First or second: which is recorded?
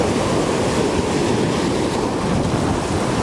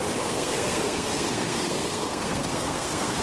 first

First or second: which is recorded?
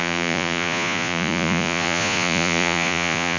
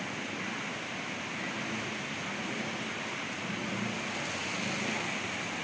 second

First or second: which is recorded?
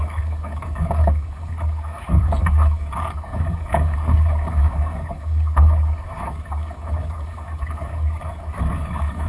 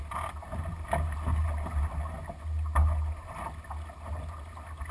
second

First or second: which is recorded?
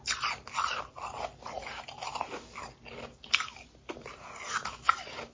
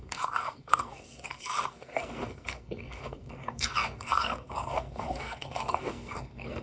first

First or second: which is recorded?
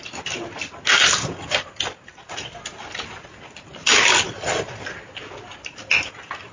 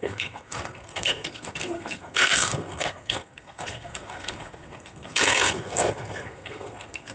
first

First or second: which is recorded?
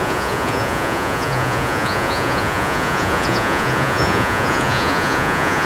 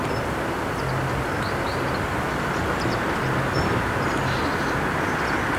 second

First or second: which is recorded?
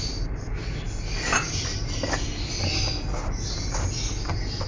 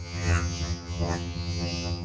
first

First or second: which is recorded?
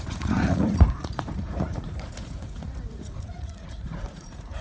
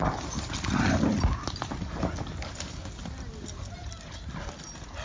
second